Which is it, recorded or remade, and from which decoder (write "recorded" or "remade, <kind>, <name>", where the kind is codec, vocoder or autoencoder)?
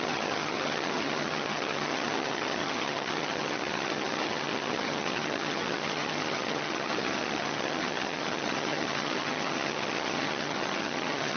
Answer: remade, vocoder, HiFi-GAN